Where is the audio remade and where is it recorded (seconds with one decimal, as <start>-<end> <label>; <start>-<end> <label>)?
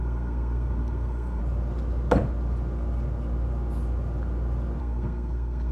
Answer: 0.0-1.4 remade; 1.4-4.8 recorded; 4.8-5.7 remade